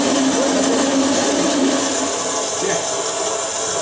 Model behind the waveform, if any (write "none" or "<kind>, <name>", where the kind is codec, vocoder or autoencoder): none